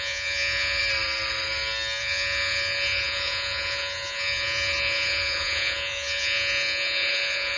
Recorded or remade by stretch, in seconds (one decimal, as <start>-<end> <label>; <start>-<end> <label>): 0.0-0.8 remade; 0.8-2.0 recorded; 2.0-7.6 remade